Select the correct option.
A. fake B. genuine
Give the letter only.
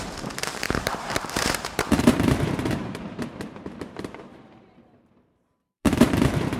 A